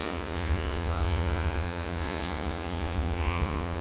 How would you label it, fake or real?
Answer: fake